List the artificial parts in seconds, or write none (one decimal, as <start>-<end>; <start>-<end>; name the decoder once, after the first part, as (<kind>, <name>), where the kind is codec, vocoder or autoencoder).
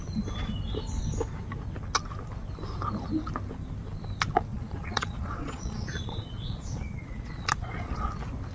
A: 4.5-8.1 (vocoder, Vocos)